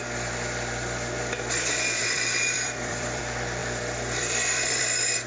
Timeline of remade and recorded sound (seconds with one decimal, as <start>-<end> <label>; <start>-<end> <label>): 0.0-2.0 recorded; 2.0-3.2 remade; 3.2-3.6 recorded; 3.6-4.8 remade; 4.8-5.3 recorded

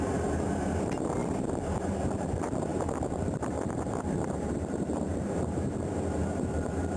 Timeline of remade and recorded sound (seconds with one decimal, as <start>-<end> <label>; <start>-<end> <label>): 0.0-7.0 remade